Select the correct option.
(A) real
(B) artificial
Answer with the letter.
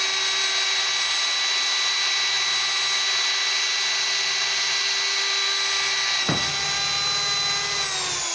A